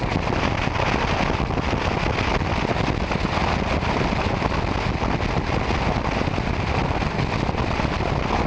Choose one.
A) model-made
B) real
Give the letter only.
B